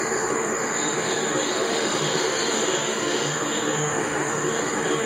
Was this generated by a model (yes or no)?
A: yes